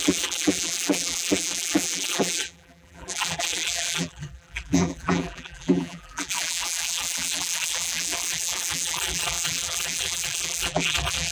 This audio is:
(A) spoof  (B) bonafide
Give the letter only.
A